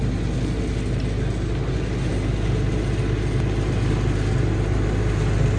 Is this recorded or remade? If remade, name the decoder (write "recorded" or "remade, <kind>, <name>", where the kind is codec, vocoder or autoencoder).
recorded